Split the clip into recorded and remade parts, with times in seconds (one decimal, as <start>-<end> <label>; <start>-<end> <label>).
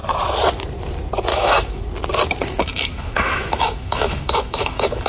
0.0-1.3 recorded; 1.3-1.8 remade; 1.8-2.7 recorded; 2.7-5.1 remade